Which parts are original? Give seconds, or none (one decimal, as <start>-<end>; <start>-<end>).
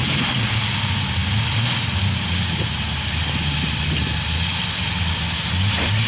0.0-6.1